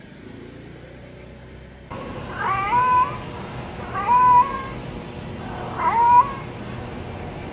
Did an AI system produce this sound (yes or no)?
no